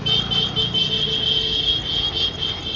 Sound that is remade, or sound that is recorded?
recorded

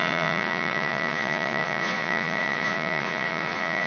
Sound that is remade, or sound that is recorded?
remade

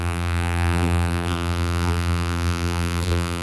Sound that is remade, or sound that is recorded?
remade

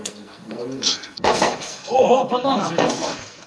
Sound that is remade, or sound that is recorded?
remade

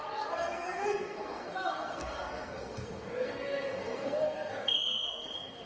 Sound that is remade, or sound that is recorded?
remade